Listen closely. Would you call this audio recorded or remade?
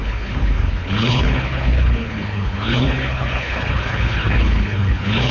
remade